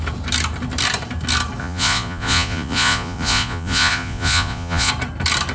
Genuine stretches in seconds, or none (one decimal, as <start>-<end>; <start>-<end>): 0.0-1.6; 4.9-5.5